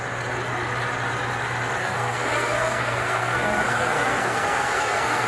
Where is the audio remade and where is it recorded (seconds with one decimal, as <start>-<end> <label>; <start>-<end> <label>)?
0.0-1.8 recorded; 1.8-5.3 remade